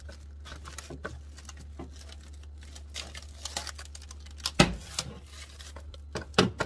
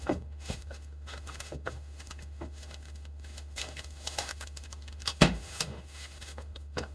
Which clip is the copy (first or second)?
second